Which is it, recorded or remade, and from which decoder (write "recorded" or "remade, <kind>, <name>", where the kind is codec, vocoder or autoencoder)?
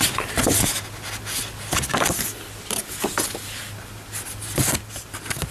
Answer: recorded